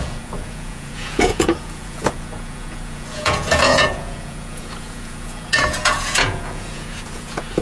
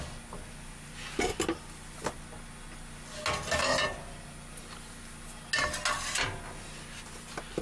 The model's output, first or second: first